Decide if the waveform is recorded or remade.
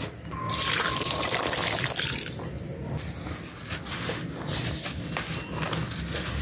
recorded